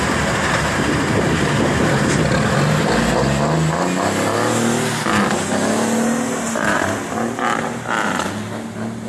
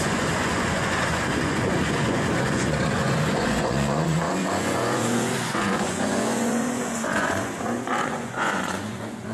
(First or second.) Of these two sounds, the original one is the first